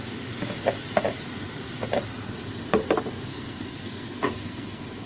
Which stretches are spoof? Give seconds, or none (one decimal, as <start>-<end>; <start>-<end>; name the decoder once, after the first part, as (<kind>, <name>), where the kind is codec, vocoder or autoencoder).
3.3-5.1 (codec, SNAC)